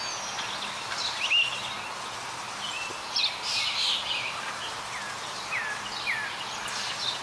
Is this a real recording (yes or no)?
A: yes